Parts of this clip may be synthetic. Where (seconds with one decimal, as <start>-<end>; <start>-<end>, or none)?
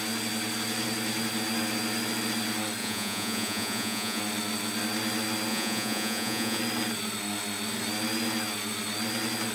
2.8-4.2; 5.5-6.6